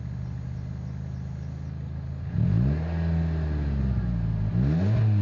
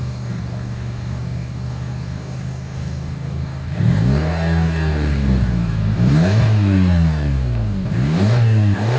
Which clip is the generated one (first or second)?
second